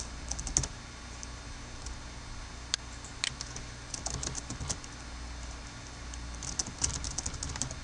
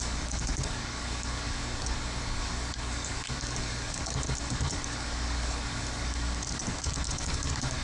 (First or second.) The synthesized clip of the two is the second